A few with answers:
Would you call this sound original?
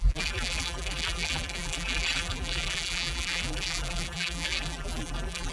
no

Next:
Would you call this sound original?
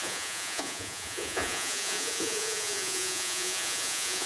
no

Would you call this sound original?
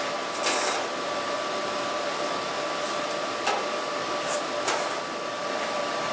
yes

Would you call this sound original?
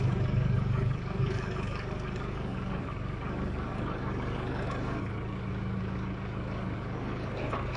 no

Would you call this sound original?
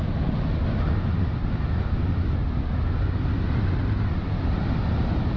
yes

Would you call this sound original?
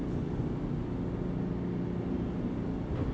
yes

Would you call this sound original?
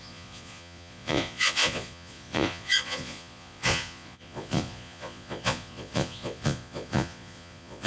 no